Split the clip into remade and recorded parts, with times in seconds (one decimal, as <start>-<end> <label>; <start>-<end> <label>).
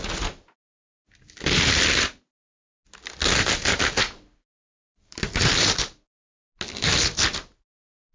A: 0.0-5.0 recorded; 5.0-5.9 remade; 5.9-8.1 recorded